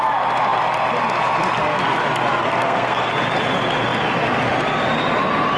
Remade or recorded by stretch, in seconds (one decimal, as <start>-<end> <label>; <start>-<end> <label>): 0.0-2.4 recorded; 2.4-3.1 remade; 3.1-5.6 recorded